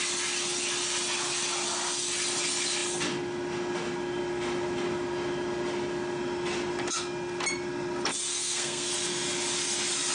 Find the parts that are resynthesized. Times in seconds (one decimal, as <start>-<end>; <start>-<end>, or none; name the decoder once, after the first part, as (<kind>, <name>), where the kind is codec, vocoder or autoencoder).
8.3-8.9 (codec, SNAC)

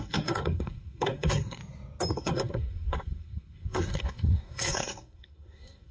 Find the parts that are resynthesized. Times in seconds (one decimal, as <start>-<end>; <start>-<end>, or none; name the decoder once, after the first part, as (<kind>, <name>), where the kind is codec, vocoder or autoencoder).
0.0-1.6 (codec, SNAC); 2.1-5.9

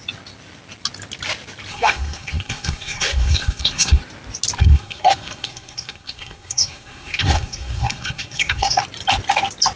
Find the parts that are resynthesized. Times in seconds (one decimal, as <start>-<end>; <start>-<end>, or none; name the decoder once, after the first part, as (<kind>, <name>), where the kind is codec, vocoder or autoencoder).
1.7-4.0 (codec, SNAC); 4.6-8.8

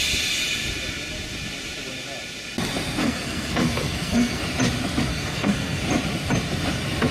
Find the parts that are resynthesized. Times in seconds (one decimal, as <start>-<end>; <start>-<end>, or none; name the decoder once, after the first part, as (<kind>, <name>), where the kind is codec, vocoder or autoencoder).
3.0-4.4 (codec, SNAC); 5.1-5.8

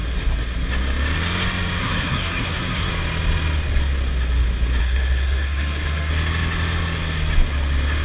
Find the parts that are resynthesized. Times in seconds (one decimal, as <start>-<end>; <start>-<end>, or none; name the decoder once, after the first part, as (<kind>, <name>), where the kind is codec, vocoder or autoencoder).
1.8-2.9 (codec, SNAC); 4.8-6.1